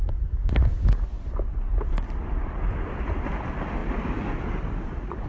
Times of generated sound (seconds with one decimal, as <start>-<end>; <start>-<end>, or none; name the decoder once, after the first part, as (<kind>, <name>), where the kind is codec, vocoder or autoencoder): none